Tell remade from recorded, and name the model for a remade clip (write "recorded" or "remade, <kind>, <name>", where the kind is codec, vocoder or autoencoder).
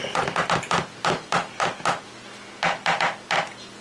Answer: recorded